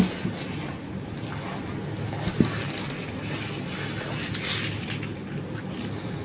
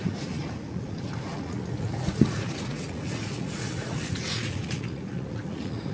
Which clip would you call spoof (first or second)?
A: second